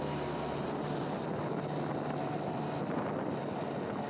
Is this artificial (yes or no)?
no